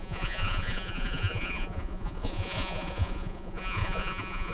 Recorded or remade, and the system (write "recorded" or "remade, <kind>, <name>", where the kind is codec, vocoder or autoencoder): remade, vocoder, Vocos